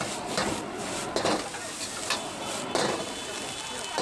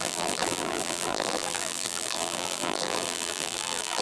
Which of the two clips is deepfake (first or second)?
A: second